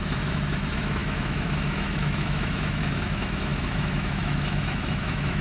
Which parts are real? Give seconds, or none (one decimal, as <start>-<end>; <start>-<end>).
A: none